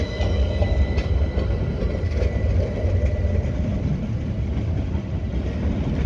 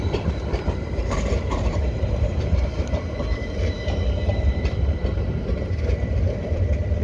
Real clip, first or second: first